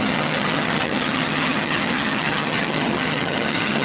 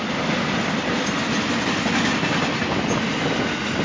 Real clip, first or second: second